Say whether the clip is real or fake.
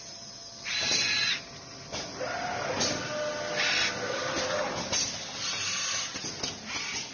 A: real